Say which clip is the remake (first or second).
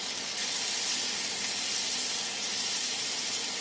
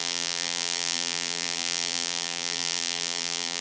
second